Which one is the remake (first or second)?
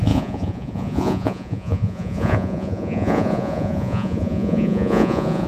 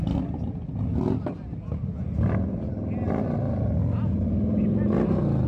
first